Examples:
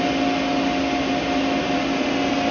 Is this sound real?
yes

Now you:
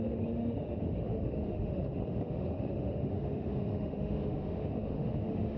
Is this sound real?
no